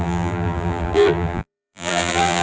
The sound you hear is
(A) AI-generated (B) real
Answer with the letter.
A